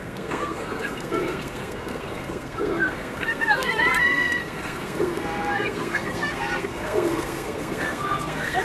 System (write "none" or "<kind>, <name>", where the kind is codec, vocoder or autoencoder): codec, SNAC